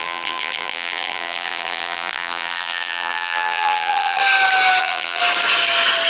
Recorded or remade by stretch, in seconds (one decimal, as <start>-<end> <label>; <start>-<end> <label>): 0.0-4.2 remade; 4.2-4.8 recorded; 4.8-5.2 remade; 5.2-6.1 recorded